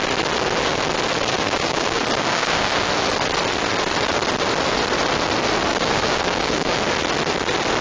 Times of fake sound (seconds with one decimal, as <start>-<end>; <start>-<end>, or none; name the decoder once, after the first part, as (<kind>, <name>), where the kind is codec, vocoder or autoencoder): 1.3-2.9 (codec, DAC); 5.7-6.8